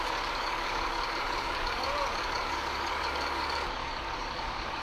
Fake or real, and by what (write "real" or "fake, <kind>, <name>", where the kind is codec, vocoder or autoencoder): fake, codec, DAC